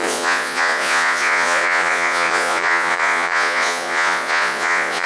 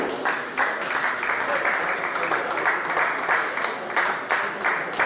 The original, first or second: second